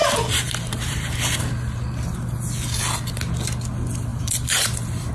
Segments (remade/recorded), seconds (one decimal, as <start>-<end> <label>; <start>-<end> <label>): 0.0-1.1 remade; 1.1-4.1 recorded; 4.1-5.1 remade